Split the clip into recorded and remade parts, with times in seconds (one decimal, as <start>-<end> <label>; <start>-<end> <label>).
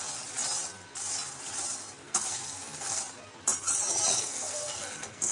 0.0-2.0 recorded; 2.0-3.0 remade; 3.0-4.1 recorded; 4.1-5.3 remade